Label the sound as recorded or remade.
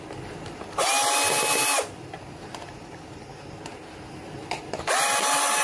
recorded